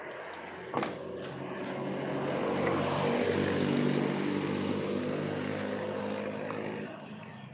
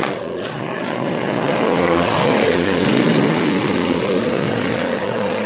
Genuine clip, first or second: first